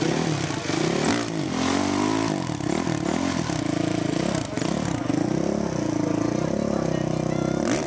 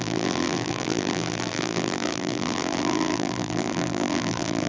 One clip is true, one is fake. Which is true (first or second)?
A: first